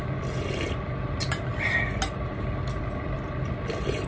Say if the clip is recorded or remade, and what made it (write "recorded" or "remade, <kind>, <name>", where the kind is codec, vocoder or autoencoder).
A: recorded